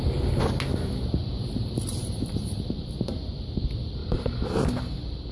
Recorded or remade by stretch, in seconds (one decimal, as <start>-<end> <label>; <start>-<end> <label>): 0.0-1.2 recorded; 1.2-2.8 remade; 2.8-4.0 recorded; 4.0-5.3 remade